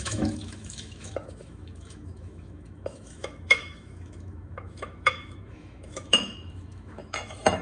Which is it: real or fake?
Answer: fake